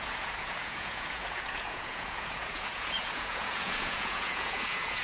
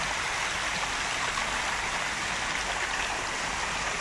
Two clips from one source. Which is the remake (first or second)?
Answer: first